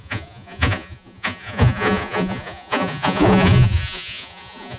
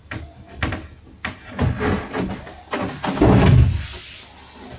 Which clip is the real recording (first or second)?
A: second